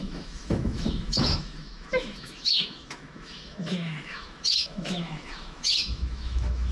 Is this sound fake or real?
fake